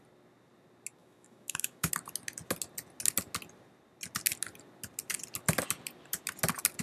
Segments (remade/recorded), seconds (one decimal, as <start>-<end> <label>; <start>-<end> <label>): 0.0-1.0 recorded; 1.0-1.9 remade; 1.9-6.8 recorded